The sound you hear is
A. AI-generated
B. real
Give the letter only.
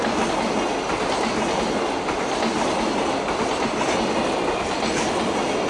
B